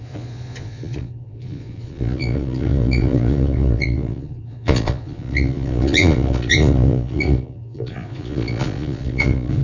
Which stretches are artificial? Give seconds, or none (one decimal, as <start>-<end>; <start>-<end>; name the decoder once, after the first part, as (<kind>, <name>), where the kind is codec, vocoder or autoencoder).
0.0-9.6 (vocoder, Vocos)